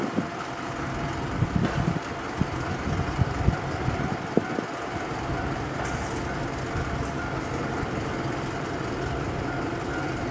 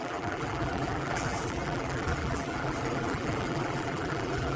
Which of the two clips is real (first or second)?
first